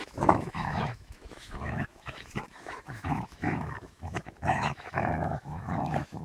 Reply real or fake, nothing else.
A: fake